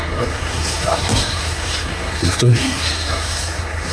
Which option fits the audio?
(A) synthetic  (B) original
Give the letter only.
A